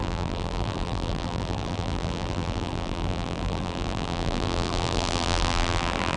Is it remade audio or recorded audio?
remade